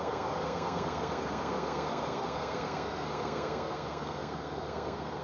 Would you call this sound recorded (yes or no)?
no